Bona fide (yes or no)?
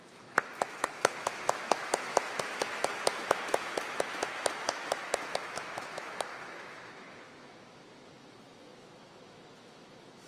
no